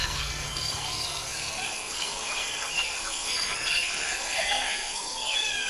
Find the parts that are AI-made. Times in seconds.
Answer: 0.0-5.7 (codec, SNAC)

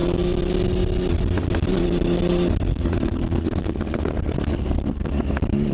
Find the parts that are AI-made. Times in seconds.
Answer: 2.7-5.2 (codec, SNAC)

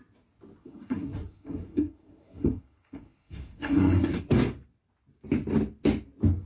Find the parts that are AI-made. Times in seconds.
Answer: 0.6-4.5 (codec, SNAC)

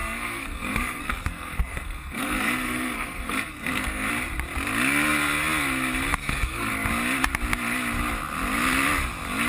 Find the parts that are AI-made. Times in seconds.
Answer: 0.0-4.1 (codec, SNAC); 6.1-6.7

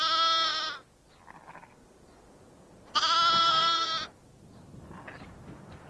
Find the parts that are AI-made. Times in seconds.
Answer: 3.4-3.9 (codec, SNAC)